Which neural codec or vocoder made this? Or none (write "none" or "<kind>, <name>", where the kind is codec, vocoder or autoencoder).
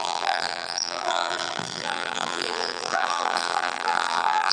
vocoder, BigVGAN v2